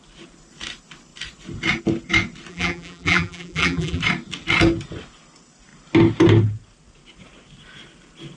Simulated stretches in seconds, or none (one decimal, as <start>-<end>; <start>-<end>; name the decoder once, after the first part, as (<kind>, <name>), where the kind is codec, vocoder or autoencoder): 2.5-4.0 (vocoder, BigVGAN v2)